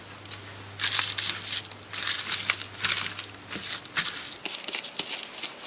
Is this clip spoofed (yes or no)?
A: no